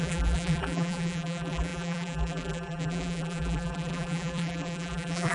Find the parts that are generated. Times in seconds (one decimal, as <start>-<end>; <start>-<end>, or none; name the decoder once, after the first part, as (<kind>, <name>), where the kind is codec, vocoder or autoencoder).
0.0-5.3 (vocoder, BigVGAN v2)